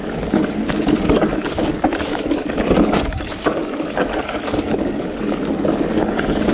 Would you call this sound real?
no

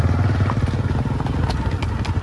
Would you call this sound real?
yes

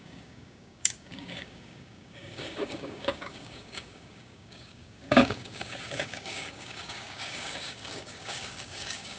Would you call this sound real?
no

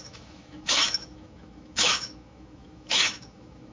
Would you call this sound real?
no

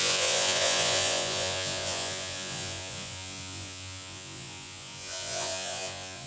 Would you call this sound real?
no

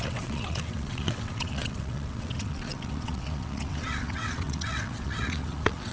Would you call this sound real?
no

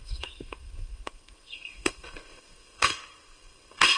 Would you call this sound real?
no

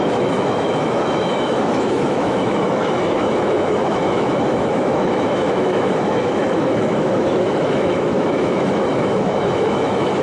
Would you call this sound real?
no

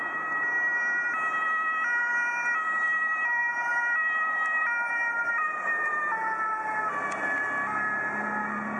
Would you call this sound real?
yes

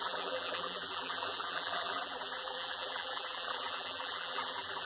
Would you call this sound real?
no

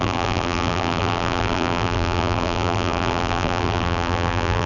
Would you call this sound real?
no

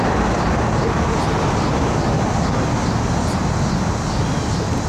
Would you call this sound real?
yes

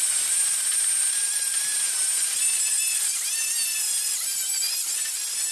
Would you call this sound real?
yes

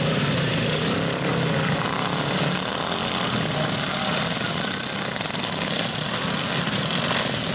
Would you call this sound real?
yes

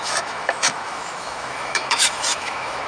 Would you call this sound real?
no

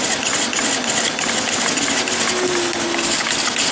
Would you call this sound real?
yes